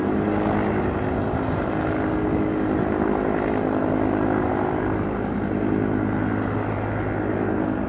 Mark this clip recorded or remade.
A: recorded